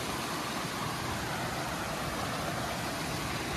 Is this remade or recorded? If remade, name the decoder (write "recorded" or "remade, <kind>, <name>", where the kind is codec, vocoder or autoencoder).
recorded